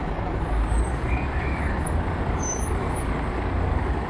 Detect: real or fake fake